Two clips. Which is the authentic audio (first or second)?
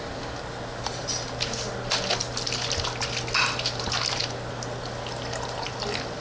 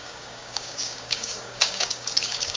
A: first